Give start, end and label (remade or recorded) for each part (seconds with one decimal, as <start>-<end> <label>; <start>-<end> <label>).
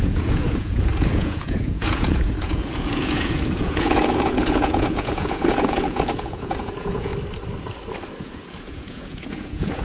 0.0-7.1 remade; 7.1-8.2 recorded; 8.2-9.8 remade